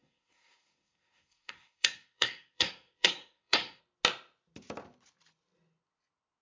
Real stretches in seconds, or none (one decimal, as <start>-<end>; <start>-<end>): 3.8-6.4